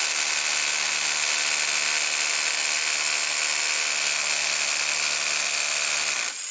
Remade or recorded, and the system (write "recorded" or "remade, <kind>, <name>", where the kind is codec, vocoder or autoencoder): recorded